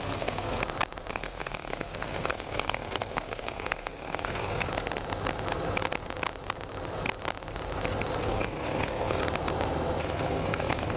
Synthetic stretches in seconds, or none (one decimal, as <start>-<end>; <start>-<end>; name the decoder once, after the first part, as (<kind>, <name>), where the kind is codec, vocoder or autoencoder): 0.0-0.6 (codec, SNAC); 1.1-4.7; 8.2-9.2; 10.0-11.0